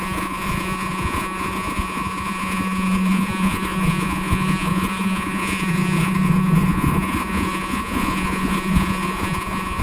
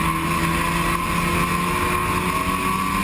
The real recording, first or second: second